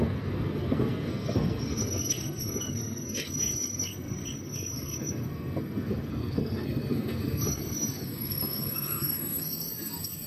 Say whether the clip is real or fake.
fake